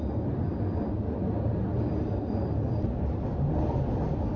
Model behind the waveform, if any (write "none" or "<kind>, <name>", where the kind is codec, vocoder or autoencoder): none